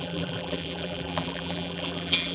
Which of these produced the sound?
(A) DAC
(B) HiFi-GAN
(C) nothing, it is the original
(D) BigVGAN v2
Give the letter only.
D